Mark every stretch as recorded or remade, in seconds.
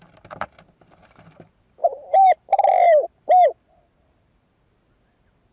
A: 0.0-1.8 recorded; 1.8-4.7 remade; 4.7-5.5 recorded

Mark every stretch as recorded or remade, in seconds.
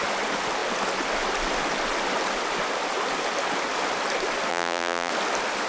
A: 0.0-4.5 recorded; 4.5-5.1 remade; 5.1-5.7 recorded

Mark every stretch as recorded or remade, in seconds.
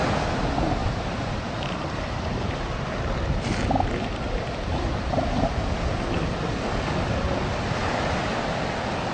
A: 0.0-0.8 recorded; 0.8-2.9 remade; 2.9-9.1 recorded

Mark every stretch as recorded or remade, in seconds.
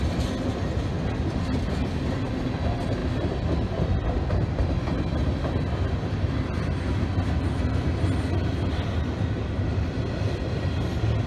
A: 0.0-11.3 recorded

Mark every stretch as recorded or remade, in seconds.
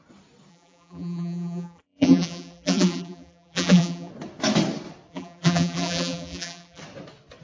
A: 0.0-0.5 recorded; 0.5-4.1 remade; 4.1-5.1 recorded; 5.1-6.8 remade; 6.8-7.4 recorded